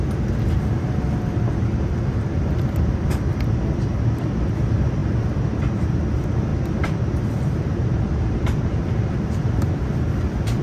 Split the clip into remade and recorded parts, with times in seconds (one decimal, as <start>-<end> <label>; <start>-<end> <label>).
0.0-6.5 recorded; 6.5-9.8 remade; 9.8-10.6 recorded